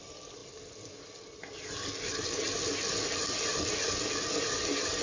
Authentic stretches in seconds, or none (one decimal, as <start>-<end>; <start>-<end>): 0.0-5.0